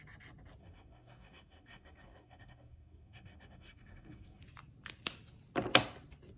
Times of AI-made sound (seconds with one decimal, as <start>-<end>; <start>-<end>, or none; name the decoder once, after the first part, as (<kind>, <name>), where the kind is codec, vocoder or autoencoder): 0.6-4.4 (codec, SNAC)